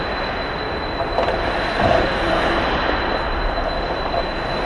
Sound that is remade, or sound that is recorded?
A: recorded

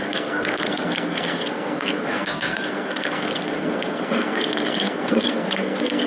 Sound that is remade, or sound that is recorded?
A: remade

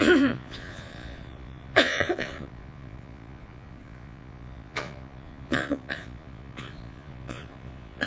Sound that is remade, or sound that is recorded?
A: remade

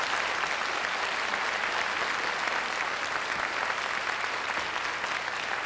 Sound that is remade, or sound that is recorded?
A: recorded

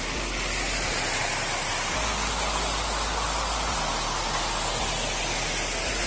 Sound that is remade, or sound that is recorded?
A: recorded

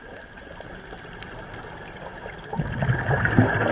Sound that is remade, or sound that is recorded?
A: recorded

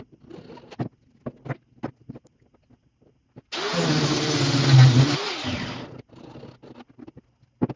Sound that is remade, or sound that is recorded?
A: recorded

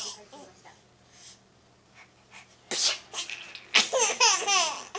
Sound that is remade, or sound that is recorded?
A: recorded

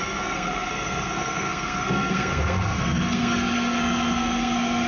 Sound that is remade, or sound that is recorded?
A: remade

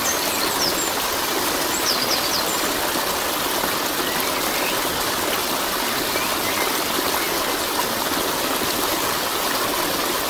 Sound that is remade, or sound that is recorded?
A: recorded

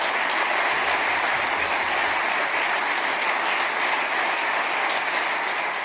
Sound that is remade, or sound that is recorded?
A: recorded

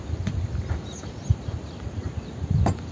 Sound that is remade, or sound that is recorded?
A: recorded